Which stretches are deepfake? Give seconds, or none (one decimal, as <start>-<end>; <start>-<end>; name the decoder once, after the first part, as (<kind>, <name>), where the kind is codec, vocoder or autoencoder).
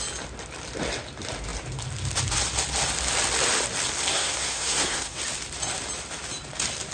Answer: 4.1-5.2 (codec, SNAC)